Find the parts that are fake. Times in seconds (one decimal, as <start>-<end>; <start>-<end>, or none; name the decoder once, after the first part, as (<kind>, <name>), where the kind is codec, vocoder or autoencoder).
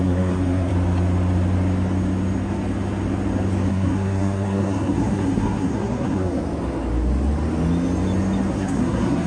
0.0-0.7 (codec, SNAC); 3.7-6.4; 8.5-9.3